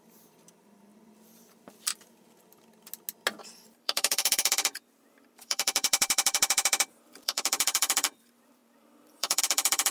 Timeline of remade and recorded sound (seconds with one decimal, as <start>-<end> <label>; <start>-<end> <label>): 0.0-0.9 remade; 0.9-3.7 recorded; 3.7-9.9 remade